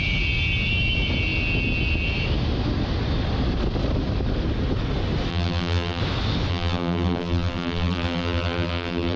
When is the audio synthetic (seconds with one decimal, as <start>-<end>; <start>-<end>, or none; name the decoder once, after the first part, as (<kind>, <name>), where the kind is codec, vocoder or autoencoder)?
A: 5.3-6.0 (vocoder, BigVGAN v2); 6.5-9.2